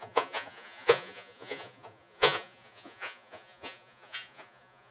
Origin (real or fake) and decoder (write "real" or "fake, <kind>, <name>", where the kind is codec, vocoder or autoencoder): fake, vocoder, Vocos